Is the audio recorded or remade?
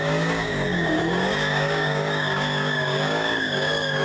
remade